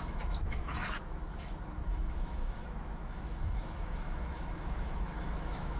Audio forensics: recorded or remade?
remade